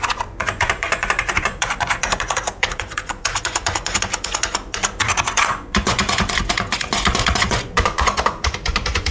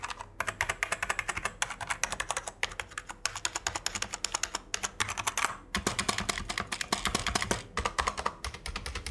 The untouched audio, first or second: second